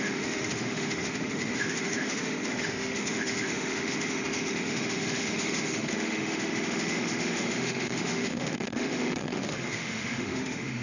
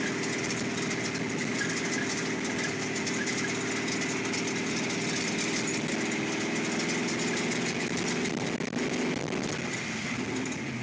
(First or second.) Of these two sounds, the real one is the second